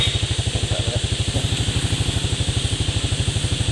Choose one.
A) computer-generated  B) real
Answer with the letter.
B